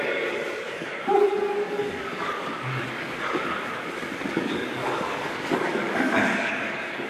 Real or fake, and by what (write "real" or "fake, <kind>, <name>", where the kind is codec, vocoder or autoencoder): fake, codec, DAC